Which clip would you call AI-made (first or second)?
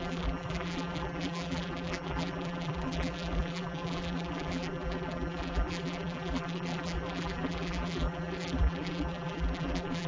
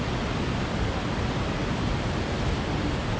first